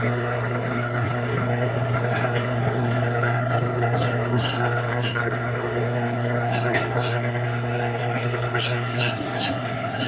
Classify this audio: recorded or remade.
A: remade